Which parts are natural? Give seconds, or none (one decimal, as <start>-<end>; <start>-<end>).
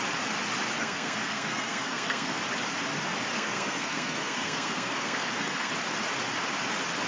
0.0-0.8; 2.4-3.3; 5.7-7.1